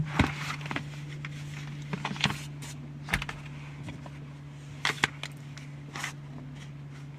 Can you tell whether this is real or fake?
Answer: real